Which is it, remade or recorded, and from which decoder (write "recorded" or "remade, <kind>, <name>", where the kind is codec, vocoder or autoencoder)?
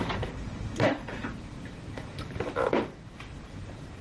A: remade, vocoder, BigVGAN v2